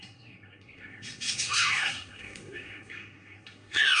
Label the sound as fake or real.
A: fake